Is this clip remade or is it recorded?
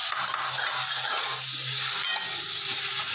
recorded